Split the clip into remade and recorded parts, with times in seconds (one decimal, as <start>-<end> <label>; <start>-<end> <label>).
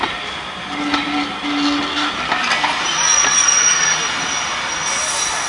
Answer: 0.0-5.5 recorded